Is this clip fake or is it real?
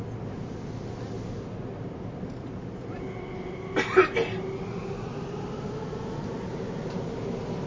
real